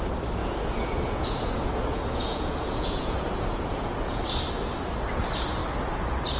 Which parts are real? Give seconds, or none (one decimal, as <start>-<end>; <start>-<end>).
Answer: 0.0-0.4; 4.2-6.4